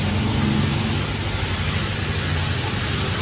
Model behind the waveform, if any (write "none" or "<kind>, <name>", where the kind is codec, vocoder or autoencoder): none